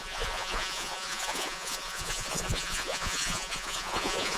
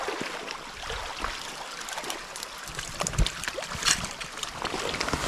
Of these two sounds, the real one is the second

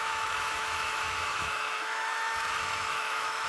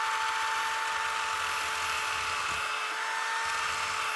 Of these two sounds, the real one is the second